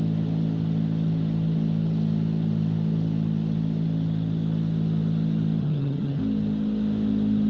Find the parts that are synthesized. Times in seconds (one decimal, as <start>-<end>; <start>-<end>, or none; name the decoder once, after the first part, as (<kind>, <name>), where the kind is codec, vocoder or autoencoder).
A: 5.6-6.2 (vocoder, HiFi-GAN)